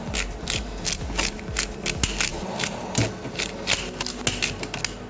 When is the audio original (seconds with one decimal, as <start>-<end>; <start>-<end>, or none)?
0.0-5.1